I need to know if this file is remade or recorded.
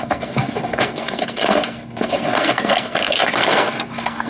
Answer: remade